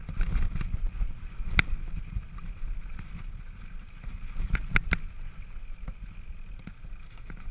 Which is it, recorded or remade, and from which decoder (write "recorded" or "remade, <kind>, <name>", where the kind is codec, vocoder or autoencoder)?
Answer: recorded